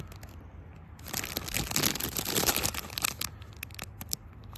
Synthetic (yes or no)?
no